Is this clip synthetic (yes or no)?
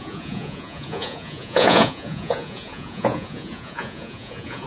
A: yes